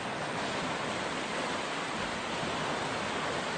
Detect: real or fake real